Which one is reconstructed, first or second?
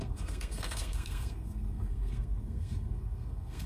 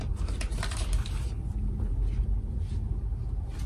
first